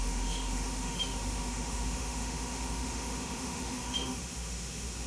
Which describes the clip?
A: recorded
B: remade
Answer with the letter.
B